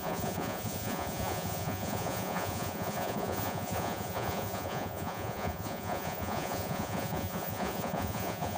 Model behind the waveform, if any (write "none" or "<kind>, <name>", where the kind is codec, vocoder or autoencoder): vocoder, Vocos